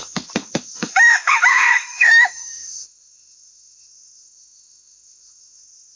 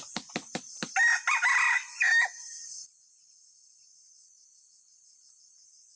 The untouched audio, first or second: second